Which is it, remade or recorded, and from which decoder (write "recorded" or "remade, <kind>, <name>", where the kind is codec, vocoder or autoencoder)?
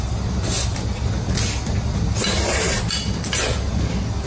recorded